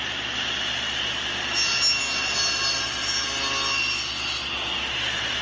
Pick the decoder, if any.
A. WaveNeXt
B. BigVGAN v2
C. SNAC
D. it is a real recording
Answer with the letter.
D